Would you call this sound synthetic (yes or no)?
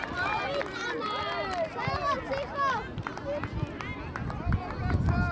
no